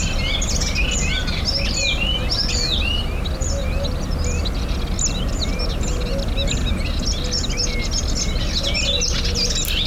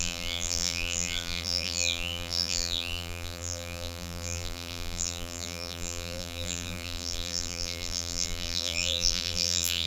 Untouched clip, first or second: first